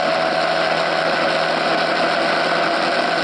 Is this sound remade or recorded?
recorded